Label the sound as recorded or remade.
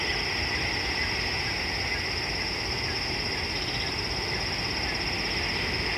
recorded